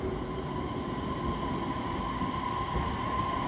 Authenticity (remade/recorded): recorded